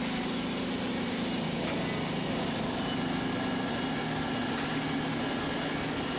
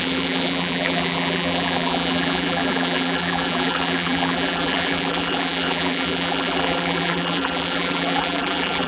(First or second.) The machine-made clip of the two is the second